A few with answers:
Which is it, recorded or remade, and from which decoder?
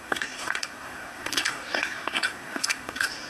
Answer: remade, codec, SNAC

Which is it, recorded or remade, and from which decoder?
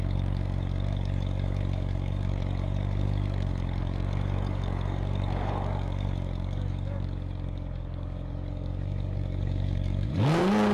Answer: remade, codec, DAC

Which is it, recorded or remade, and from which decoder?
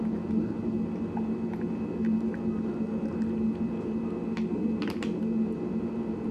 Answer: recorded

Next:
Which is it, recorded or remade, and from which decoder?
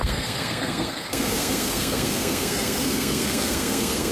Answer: remade, codec, SNAC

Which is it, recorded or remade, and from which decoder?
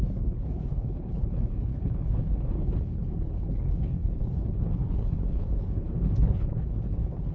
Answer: remade, codec, HILCodec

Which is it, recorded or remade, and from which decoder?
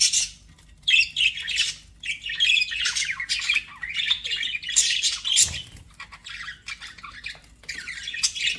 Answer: recorded